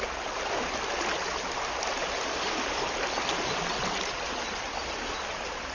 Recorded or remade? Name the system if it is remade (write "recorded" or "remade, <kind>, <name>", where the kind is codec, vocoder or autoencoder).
recorded